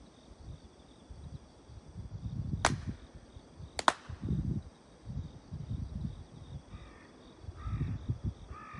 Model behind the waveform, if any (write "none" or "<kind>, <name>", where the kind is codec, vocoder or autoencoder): none